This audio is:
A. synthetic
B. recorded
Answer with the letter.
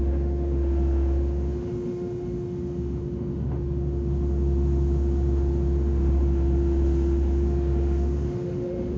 A